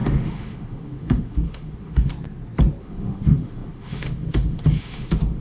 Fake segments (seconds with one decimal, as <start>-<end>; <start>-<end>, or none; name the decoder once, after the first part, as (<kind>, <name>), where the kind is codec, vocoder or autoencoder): 0.0-2.1 (autoencoder, DAC-VAE); 2.8-5.4